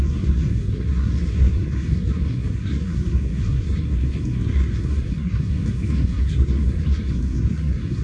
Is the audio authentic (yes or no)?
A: no